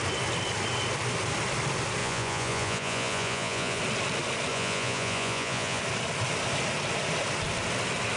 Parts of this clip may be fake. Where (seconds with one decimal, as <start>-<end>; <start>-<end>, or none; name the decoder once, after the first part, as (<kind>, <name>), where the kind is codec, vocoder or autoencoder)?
2.0-3.8 (vocoder, Vocos); 4.5-5.8